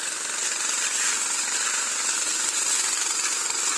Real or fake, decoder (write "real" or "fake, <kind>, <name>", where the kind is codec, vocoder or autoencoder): real